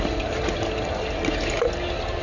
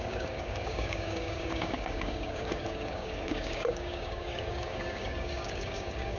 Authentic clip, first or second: first